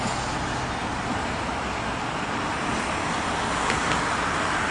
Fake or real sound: real